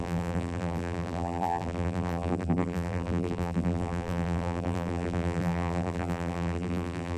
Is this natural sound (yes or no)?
no